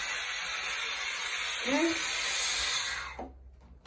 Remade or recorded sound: recorded